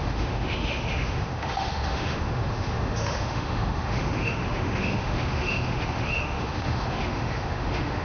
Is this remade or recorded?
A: remade